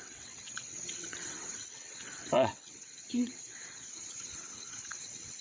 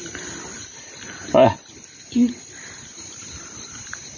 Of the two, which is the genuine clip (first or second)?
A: second